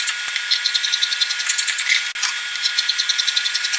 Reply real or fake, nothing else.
real